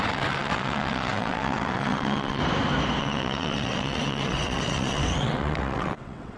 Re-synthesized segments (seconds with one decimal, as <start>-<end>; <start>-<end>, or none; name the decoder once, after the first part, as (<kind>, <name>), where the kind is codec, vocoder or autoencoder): 0.0-2.4 (vocoder, WaveNeXt); 3.0-6.4